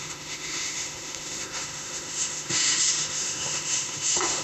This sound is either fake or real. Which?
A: fake